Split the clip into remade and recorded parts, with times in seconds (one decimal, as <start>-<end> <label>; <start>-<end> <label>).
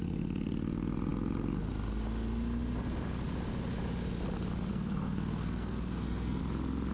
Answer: 0.0-4.7 recorded; 4.7-6.4 remade; 6.4-6.9 recorded